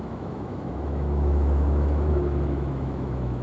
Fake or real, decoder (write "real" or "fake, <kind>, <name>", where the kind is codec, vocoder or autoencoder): fake, autoencoder, DAC-VAE